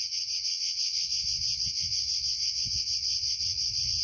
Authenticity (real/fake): fake